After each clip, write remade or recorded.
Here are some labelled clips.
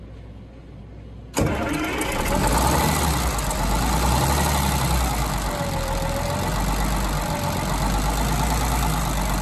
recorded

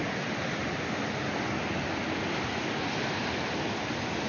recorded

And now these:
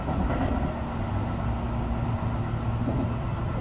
recorded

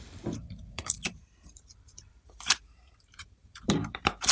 remade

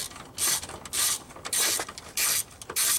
recorded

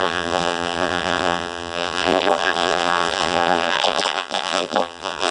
remade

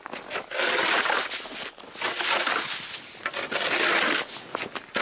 recorded